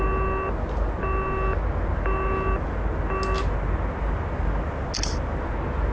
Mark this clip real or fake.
real